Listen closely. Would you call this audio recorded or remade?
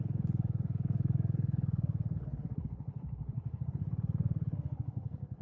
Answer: remade